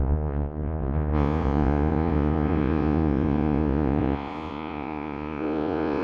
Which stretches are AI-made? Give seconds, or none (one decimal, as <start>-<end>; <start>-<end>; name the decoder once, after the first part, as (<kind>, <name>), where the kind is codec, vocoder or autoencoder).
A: 0.0-6.0 (vocoder, Vocos)

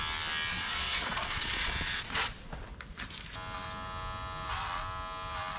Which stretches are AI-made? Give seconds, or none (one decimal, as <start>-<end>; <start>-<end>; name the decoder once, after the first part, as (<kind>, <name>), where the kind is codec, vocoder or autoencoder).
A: 0.5-2.4 (vocoder, Vocos)

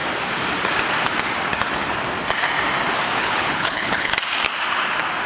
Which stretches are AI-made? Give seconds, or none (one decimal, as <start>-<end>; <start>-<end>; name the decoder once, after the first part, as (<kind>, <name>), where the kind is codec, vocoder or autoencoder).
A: 3.2-4.1 (codec, HILCodec)